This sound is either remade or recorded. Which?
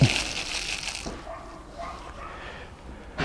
recorded